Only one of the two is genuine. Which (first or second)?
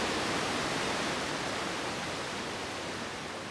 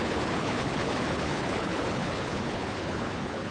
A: first